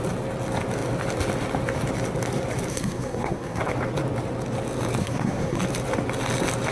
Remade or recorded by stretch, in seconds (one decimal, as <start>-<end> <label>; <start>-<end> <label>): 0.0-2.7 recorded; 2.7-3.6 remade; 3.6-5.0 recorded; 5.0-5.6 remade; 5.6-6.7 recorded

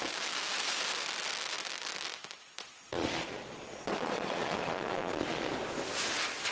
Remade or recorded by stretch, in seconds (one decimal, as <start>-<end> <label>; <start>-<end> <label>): 0.0-2.5 recorded; 2.5-5.5 remade; 5.5-6.5 recorded

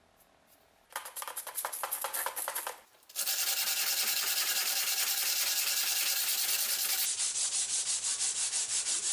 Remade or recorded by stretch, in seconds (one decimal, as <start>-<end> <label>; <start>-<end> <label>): 0.0-9.1 recorded